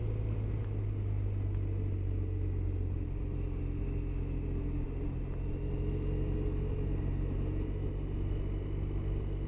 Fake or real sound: real